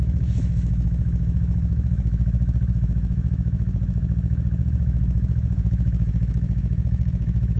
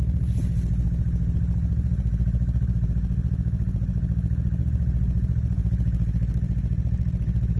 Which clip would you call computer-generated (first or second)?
first